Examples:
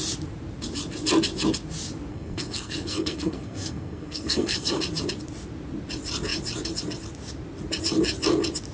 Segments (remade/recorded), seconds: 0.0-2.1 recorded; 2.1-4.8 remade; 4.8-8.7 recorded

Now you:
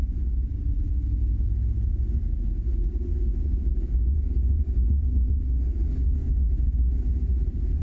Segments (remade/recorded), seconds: 0.0-0.9 recorded; 0.9-1.5 remade; 1.5-3.1 recorded; 3.1-6.4 remade; 6.4-7.8 recorded

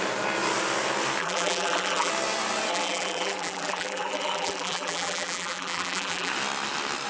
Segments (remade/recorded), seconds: 0.0-1.2 recorded; 1.2-2.1 remade; 2.1-2.7 recorded; 2.7-6.3 remade; 6.3-7.1 recorded

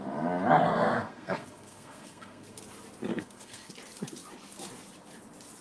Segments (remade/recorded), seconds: 0.0-0.7 recorded; 0.7-2.6 remade; 2.6-3.1 recorded; 3.1-3.7 remade; 3.7-5.6 recorded

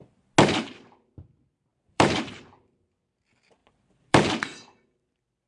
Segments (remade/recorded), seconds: 0.0-1.7 recorded; 1.7-2.2 remade; 2.2-3.6 recorded; 3.6-5.5 remade

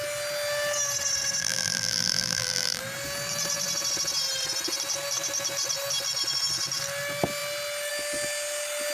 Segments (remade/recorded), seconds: 0.0-1.4 recorded; 1.4-2.8 remade; 2.8-8.9 recorded